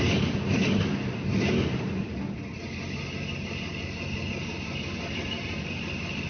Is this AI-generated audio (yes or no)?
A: no